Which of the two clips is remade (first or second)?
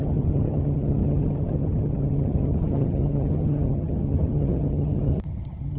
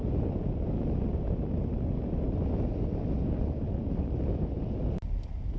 first